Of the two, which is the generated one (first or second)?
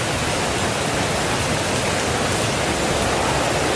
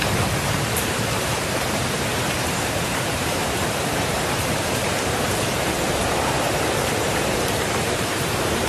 second